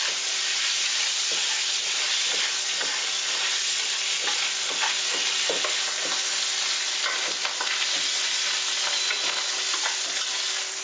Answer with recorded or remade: recorded